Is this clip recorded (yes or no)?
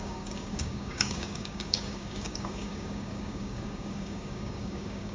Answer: no